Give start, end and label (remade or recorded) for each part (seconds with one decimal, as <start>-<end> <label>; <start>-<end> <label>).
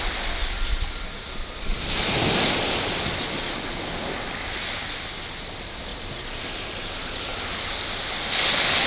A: 0.0-8.9 recorded